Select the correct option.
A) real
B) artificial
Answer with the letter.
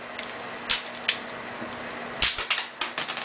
A